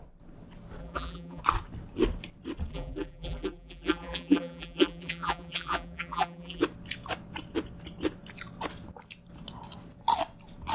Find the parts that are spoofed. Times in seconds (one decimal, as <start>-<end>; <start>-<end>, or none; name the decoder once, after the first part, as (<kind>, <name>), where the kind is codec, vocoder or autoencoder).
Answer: 0.8-1.4 (vocoder, BigVGAN v2); 2.7-6.6